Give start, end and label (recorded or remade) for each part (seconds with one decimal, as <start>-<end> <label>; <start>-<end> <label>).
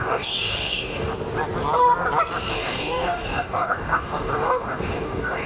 0.0-1.1 remade; 1.1-2.5 recorded; 2.5-5.5 remade